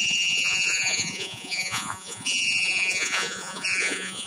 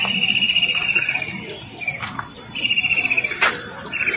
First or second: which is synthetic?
first